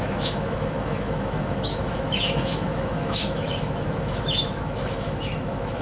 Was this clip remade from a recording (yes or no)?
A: yes